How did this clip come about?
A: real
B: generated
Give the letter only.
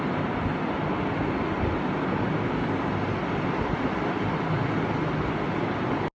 A